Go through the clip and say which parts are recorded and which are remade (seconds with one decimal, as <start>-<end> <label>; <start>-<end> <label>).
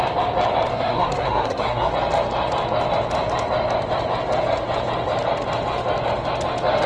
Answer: 0.0-0.7 recorded; 0.7-1.9 remade; 1.9-6.9 recorded